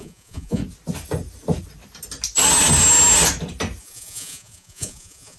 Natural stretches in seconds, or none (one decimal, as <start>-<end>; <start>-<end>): 0.6-3.8